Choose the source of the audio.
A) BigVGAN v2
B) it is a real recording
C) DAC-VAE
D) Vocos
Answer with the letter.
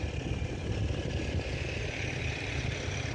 B